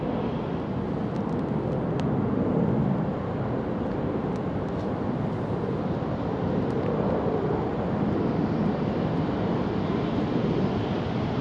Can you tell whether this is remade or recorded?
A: recorded